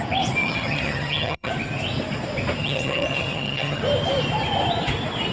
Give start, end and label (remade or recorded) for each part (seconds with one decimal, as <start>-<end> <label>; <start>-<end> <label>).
0.0-0.4 recorded; 0.4-1.5 remade; 1.5-2.6 recorded; 2.6-3.8 remade; 3.8-5.3 recorded